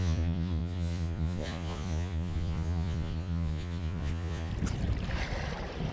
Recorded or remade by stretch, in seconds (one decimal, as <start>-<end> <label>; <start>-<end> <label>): 0.0-4.5 remade; 4.5-5.9 recorded